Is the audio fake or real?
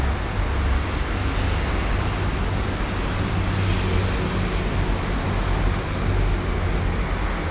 real